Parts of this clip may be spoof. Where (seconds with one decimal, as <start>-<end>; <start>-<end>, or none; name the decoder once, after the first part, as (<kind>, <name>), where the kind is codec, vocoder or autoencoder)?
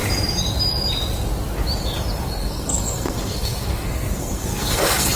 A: 2.4-5.2 (codec, SNAC)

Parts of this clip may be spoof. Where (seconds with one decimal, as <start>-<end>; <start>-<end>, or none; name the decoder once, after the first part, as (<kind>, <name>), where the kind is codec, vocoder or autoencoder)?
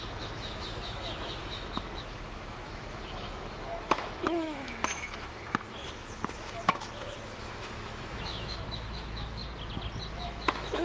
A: 0.0-9.4 (autoencoder, DAC-VAE); 10.1-10.8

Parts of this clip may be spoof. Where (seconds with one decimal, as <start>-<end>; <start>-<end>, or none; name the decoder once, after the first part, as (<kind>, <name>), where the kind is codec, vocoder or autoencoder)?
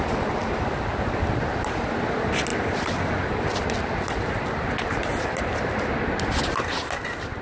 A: none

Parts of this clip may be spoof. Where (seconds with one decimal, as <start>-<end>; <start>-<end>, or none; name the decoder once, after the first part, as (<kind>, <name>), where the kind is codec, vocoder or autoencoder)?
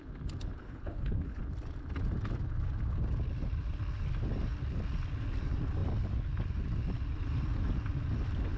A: 0.6-1.4 (codec, HILCodec)